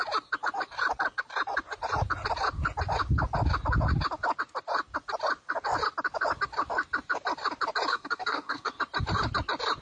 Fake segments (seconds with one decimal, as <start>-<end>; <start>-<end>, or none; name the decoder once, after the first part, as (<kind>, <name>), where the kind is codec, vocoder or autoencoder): 7.9-8.8 (codec, SNAC)